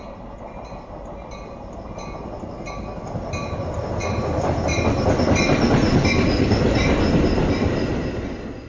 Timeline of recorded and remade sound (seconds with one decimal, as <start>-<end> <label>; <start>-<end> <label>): 0.0-8.7 recorded